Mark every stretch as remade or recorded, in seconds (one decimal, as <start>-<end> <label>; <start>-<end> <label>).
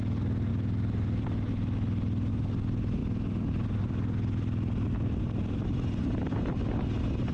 0.0-7.3 recorded